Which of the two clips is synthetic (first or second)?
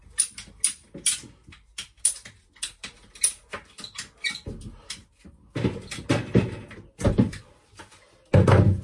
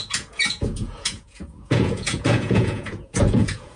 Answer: second